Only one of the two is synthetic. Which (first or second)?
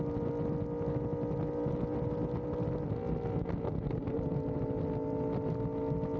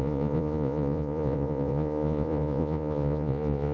second